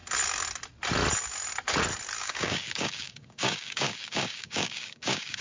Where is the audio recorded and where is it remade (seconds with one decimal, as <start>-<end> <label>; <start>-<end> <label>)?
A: 0.0-2.2 recorded; 2.2-5.4 remade